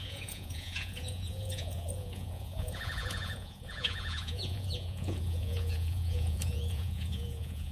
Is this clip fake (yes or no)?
yes